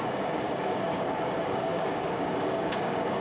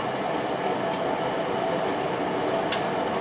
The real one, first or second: second